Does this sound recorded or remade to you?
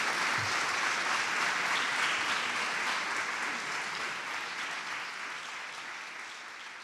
recorded